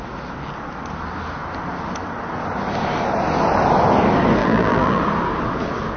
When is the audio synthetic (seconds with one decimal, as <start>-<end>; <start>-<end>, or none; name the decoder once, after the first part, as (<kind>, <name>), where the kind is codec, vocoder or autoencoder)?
4.4-5.0 (vocoder, BigVGAN v2)